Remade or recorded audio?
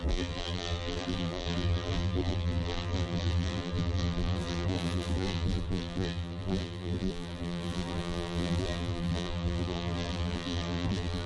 remade